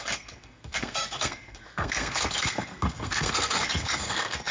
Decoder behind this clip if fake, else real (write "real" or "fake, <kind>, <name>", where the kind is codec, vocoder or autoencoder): fake, codec, SNAC